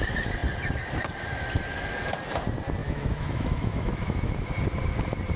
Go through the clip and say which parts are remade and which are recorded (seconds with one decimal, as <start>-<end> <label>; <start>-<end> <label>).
0.0-2.8 recorded; 2.8-4.5 remade; 4.5-5.4 recorded